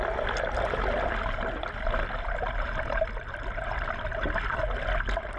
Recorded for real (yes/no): yes